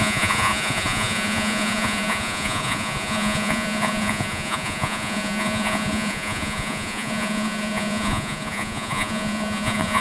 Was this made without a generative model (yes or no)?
no